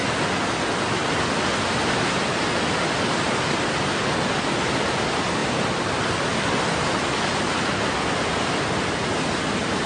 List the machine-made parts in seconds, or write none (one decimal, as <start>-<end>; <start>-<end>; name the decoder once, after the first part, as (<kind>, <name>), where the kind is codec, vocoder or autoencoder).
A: none